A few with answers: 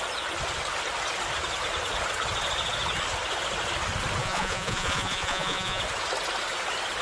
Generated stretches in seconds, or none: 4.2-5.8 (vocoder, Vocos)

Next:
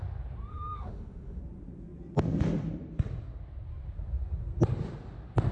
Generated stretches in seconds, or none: 0.5-1.4 (autoencoder, DAC-VAE)